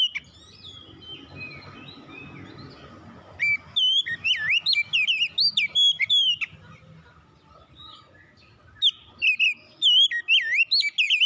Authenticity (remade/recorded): recorded